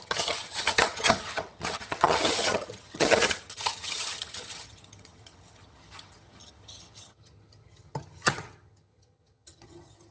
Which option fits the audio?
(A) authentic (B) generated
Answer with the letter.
B